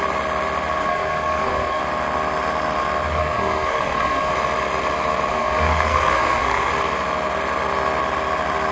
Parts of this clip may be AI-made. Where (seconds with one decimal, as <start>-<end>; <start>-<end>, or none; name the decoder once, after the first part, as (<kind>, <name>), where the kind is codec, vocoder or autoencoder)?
0.8-1.8 (codec, SNAC); 3.2-4.3; 5.3-6.7